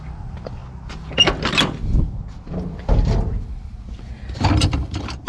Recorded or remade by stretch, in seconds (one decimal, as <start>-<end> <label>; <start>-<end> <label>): 0.0-0.6 remade; 0.6-3.8 recorded; 3.8-5.3 remade